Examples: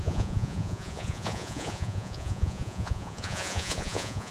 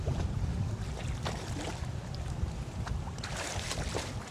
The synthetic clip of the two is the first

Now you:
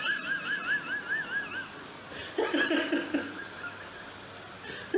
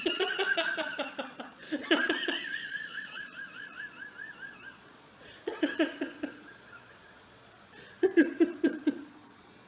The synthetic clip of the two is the second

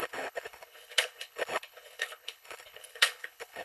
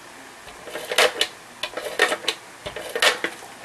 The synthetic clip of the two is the first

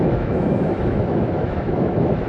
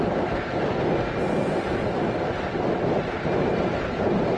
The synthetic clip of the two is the first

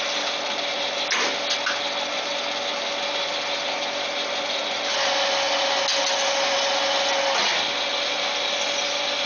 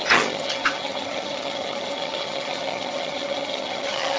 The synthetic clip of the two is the second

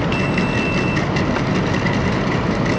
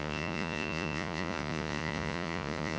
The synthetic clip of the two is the second